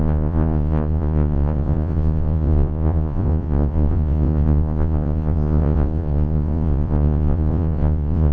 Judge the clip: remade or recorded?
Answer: remade